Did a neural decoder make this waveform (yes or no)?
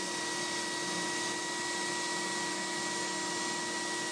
no